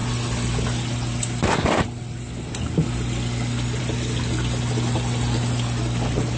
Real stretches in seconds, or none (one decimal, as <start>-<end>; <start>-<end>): 0.0-6.4